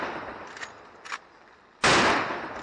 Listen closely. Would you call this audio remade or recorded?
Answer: recorded